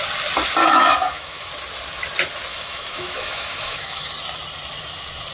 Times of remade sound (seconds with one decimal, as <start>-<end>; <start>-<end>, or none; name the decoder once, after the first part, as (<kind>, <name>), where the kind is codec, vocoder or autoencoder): 0.6-1.5 (autoencoder, DAC-VAE); 2.5-4.1